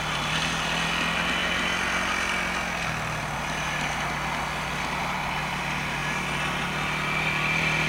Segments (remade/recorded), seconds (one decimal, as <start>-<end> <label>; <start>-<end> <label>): 0.0-1.4 remade; 1.4-5.0 recorded; 5.0-7.9 remade